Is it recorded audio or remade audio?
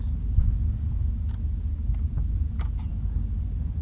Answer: recorded